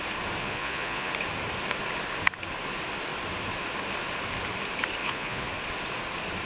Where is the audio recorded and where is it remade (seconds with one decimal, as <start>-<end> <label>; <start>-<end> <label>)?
0.0-0.4 recorded; 0.4-1.1 remade; 1.1-5.0 recorded; 5.0-5.5 remade; 5.5-6.5 recorded